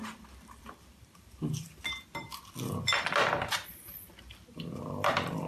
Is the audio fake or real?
fake